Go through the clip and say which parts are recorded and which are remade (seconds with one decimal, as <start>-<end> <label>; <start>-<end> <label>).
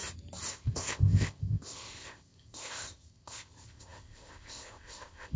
0.0-0.5 recorded; 0.5-5.4 remade